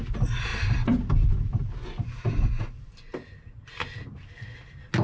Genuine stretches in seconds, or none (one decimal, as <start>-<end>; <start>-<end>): 0.0-5.0